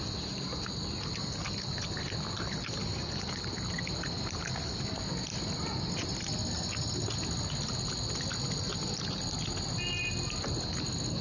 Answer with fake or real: real